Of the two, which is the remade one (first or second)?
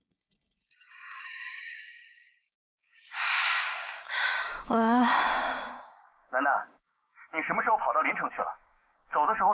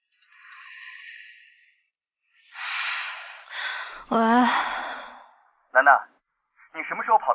first